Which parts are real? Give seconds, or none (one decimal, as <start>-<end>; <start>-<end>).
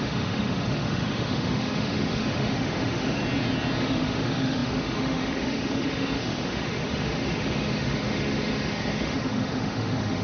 3.2-3.8